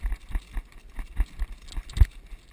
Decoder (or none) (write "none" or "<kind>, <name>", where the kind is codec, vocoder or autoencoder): none